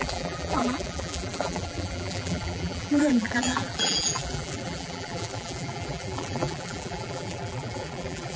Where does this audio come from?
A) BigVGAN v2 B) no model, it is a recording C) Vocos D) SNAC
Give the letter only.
A